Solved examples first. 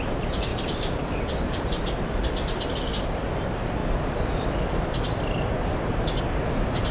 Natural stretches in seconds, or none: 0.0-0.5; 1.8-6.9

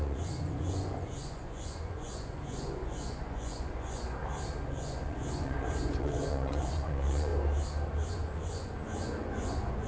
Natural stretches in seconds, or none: 4.2-4.7; 7.3-8.1

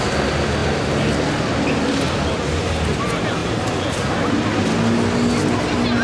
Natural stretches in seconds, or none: 0.0-6.0

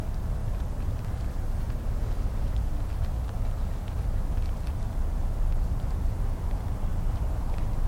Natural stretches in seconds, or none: 0.0-7.9

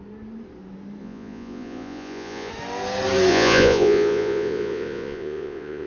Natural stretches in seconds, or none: 0.0-1.0; 2.5-3.3

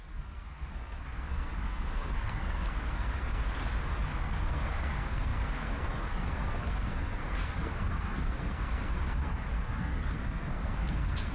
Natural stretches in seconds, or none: 3.4-3.9

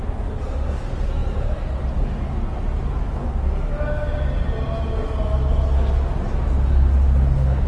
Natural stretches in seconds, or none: 0.0-7.7

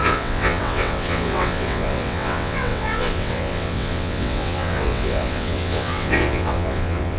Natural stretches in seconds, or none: none